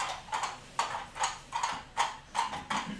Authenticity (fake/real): real